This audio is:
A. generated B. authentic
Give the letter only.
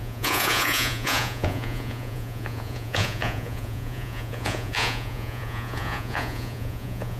A